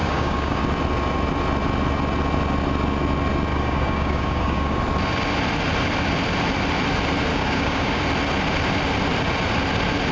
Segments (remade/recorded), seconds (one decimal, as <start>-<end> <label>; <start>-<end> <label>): 0.0-0.6 remade; 0.6-3.5 recorded; 3.5-4.8 remade; 4.8-7.3 recorded; 7.3-8.0 remade; 8.0-10.1 recorded